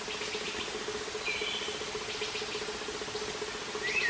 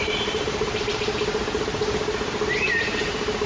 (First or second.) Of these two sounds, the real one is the first